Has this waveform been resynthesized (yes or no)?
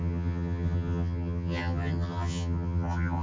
yes